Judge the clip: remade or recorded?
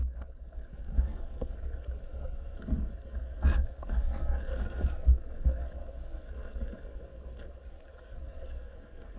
remade